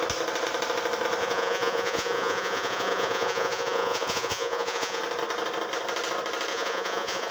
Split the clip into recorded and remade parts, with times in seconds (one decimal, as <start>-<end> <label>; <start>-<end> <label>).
0.0-1.2 recorded; 1.2-5.0 remade; 5.0-6.5 recorded; 6.5-7.3 remade